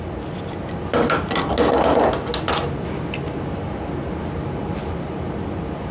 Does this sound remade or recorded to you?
recorded